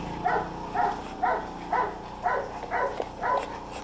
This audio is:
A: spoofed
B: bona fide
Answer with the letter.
B